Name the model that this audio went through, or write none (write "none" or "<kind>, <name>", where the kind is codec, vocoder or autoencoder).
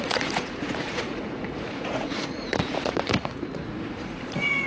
vocoder, Vocos